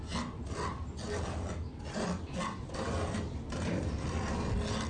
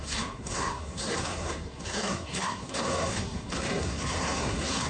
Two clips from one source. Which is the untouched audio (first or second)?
first